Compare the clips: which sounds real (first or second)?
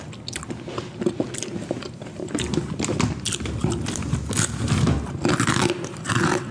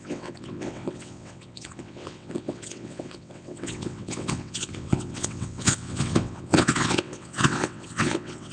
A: first